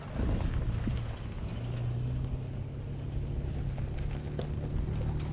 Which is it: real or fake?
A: real